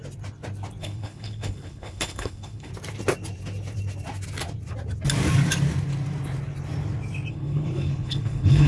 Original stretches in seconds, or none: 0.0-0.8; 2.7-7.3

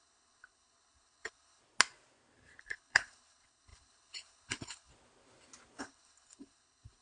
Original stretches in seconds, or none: 1.6-2.6; 4.9-5.8

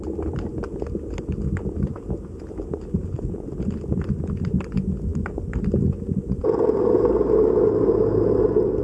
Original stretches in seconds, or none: 0.0-8.8

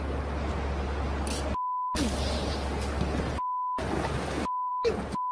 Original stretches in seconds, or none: 0.0-5.3

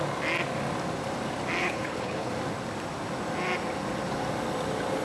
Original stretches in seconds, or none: 0.0-1.6; 2.3-5.0

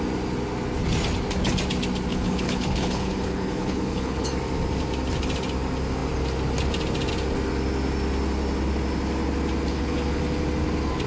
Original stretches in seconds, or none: 0.0-2.1; 4.3-9.7; 10.2-11.1